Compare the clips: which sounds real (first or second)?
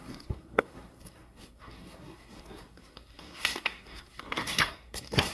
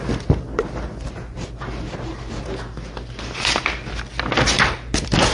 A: second